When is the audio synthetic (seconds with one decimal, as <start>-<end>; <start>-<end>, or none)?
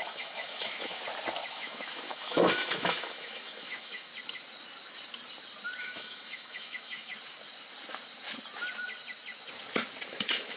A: 0.0-1.0; 1.5-4.1; 5.8-7.1; 10.1-10.6